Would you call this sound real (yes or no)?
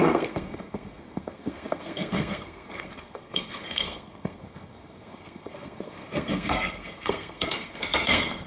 no